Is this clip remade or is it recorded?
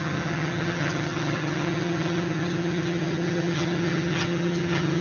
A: remade